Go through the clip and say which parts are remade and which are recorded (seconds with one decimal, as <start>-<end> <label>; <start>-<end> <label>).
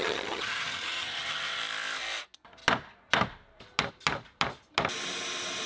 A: 0.0-1.6 remade; 1.6-5.7 recorded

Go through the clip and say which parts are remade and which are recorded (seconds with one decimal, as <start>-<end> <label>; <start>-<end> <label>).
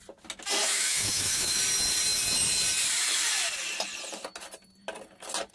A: 0.0-0.6 recorded; 0.6-1.6 remade; 1.6-5.5 recorded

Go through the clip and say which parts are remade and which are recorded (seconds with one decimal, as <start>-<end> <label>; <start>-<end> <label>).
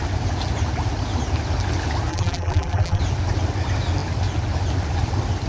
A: 0.0-2.1 recorded; 2.1-3.0 remade; 3.0-5.5 recorded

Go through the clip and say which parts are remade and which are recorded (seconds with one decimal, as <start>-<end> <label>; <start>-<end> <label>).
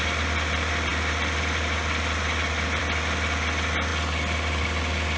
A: 0.0-5.2 recorded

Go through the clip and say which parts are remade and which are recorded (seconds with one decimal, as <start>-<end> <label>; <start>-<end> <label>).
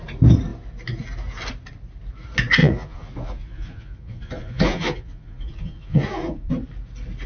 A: 0.0-2.6 recorded; 2.6-6.5 remade; 6.5-7.3 recorded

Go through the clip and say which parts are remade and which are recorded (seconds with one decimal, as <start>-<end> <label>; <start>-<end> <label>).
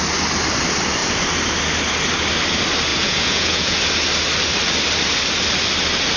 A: 0.0-2.9 recorded; 2.9-3.8 remade; 3.8-6.2 recorded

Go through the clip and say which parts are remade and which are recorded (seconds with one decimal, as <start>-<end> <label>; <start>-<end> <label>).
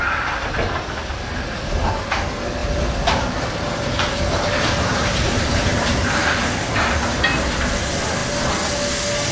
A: 0.0-2.6 recorded; 2.6-7.2 remade; 7.2-9.3 recorded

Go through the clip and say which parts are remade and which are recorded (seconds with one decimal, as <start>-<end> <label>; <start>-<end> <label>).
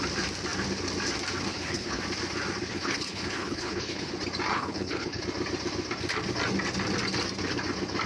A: 0.0-1.5 recorded; 1.5-2.0 remade; 2.0-2.6 recorded; 2.6-4.1 remade; 4.1-4.5 recorded; 4.5-5.2 remade; 5.2-8.1 recorded